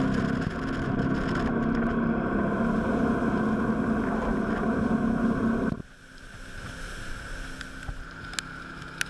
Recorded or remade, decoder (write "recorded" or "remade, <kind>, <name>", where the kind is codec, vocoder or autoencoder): recorded